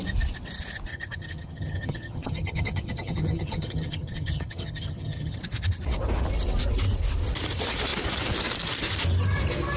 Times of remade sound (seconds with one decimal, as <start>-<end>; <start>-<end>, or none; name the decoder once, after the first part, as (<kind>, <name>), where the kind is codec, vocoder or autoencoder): 0.9-5.4 (vocoder, HiFi-GAN)